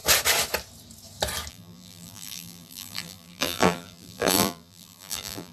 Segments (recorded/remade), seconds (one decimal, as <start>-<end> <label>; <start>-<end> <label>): 0.0-1.5 recorded; 1.5-5.5 remade